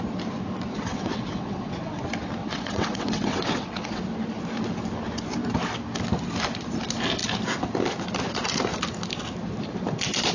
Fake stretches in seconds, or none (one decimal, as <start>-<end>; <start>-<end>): 0.7-2.0; 2.4-4.0